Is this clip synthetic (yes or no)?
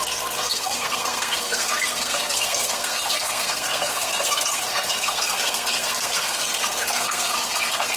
yes